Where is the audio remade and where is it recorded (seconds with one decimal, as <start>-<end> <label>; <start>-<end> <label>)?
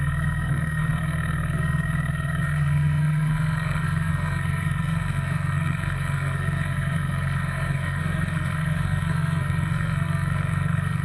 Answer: 0.0-11.0 remade